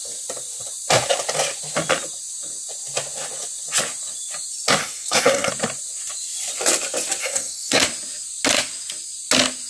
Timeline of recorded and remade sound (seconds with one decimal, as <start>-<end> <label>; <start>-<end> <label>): 0.0-4.8 recorded; 4.8-5.5 remade; 5.5-7.2 recorded; 7.2-7.8 remade; 7.8-9.7 recorded